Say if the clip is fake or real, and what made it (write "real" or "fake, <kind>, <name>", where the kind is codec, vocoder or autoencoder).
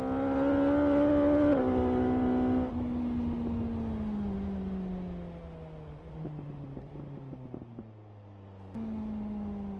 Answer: real